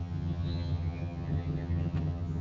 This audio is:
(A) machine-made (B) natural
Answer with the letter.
A